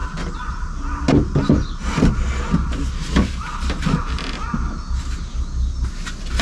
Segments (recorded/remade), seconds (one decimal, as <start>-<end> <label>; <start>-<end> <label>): 0.0-6.4 recorded